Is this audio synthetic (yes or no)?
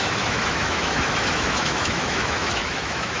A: yes